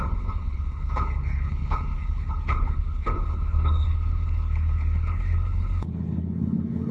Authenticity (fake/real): fake